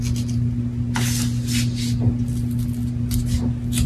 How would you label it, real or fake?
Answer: real